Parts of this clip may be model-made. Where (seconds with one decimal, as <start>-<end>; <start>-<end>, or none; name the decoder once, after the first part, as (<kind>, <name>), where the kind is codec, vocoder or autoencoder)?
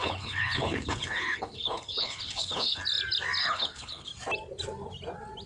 0.0-2.8 (codec, HILCodec); 3.4-4.1